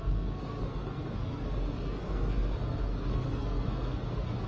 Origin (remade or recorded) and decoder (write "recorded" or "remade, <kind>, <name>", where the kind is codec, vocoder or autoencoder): remade, codec, SNAC